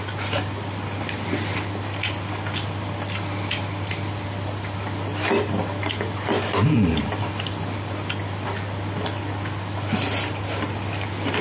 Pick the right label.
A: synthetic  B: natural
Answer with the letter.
A